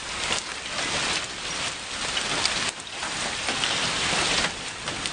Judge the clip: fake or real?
real